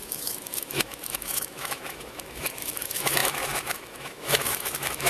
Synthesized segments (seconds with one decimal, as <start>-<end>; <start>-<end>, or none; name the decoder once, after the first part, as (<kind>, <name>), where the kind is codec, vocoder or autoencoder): 0.0-5.1 (autoencoder, DAC-VAE)